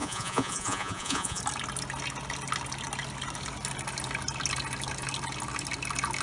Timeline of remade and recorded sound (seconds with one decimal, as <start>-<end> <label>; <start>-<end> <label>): 0.0-1.4 remade; 1.4-6.2 recorded